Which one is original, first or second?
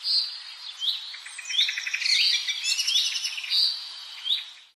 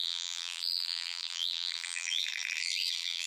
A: first